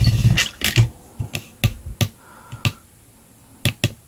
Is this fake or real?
real